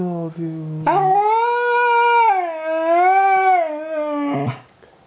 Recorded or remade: recorded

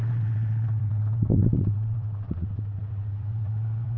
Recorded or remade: remade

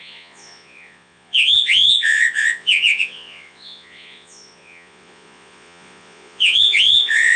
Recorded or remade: remade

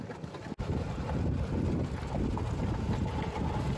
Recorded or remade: recorded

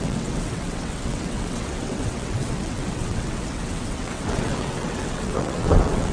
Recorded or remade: remade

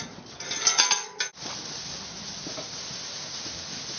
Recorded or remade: recorded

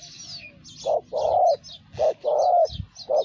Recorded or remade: recorded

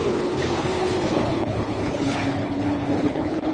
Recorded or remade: remade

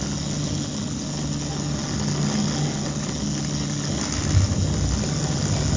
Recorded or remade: recorded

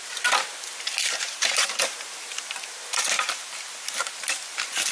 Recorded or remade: remade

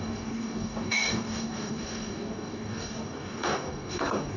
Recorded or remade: remade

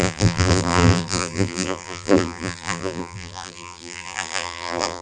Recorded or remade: remade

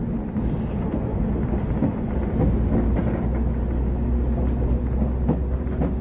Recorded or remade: recorded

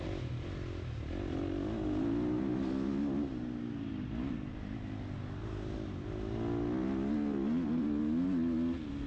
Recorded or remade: recorded